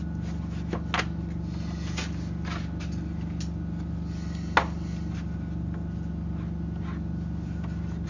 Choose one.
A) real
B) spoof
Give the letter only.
A